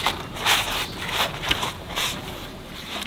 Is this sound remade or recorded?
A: remade